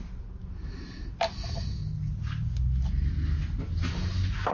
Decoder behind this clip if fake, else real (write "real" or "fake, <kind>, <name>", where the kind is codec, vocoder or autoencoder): real